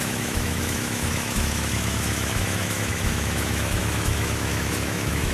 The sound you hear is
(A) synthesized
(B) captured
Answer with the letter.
A